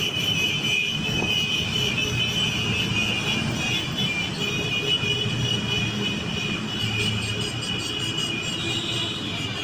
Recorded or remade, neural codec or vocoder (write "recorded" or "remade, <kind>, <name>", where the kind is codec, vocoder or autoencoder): recorded